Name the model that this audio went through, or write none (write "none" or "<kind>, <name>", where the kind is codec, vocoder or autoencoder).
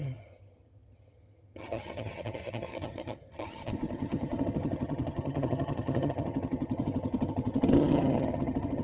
vocoder, HiFi-GAN